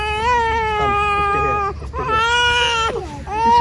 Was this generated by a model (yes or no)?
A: no